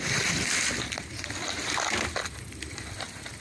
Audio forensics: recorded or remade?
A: recorded